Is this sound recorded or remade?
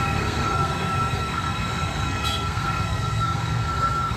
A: remade